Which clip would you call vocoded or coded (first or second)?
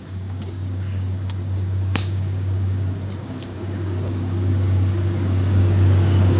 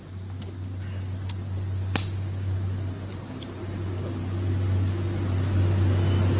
first